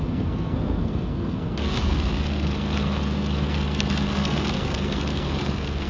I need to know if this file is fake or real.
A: fake